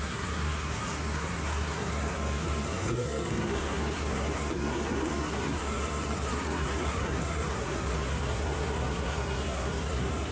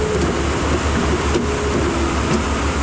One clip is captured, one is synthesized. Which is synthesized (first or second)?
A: first